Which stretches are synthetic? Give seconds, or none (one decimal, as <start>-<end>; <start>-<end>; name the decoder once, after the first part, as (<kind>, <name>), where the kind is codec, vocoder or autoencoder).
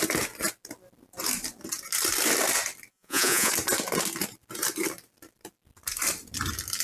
2.9-3.5 (vocoder, Vocos)